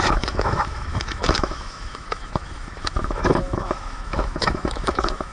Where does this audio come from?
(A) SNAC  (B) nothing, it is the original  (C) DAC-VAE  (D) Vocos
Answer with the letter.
C